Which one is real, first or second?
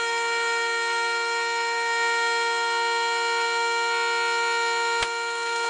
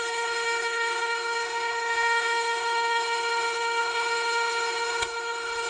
first